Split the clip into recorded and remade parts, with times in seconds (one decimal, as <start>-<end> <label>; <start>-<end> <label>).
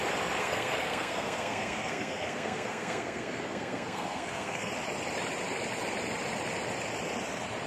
0.0-0.4 recorded; 0.4-4.7 remade; 4.7-7.7 recorded